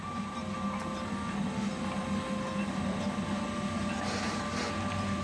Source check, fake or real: real